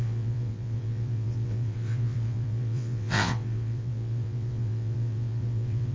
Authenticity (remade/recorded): remade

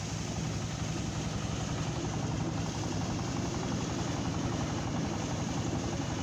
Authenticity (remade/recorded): recorded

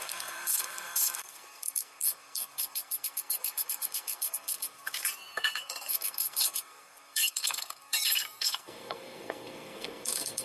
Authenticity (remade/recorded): remade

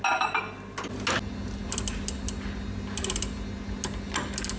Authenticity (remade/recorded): recorded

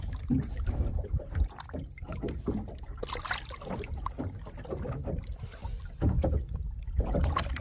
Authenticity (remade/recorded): recorded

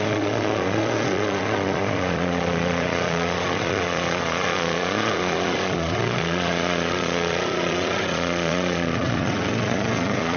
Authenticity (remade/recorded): remade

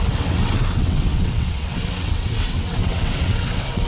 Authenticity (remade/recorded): remade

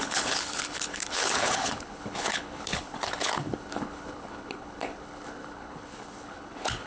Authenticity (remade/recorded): remade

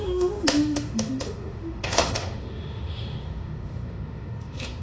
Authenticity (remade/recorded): remade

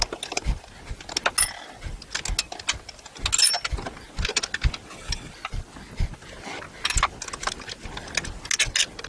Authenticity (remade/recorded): recorded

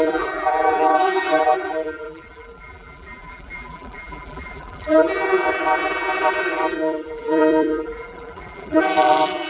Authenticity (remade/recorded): remade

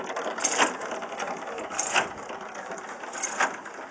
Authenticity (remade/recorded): recorded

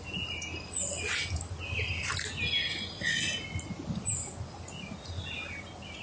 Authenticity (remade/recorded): recorded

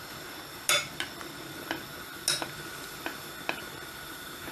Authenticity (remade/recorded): recorded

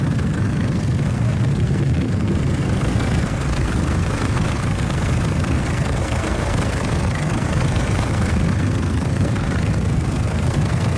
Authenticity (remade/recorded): remade